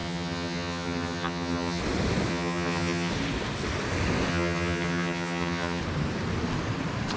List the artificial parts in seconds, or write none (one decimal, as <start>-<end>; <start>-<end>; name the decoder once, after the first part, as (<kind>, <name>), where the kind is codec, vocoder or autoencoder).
0.0-1.8 (vocoder, HiFi-GAN); 2.3-3.1; 4.3-5.8